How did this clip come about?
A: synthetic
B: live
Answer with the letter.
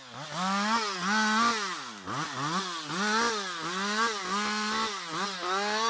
B